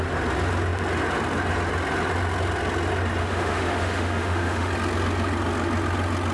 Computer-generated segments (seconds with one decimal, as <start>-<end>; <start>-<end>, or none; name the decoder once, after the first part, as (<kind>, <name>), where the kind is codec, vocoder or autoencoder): 3.2-4.7 (autoencoder, DAC-VAE)